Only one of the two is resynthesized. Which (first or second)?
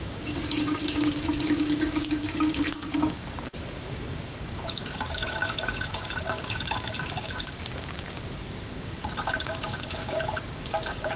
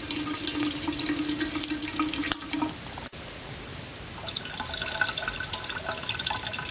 first